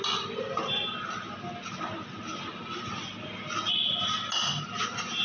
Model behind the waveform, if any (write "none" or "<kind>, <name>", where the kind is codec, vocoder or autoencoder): none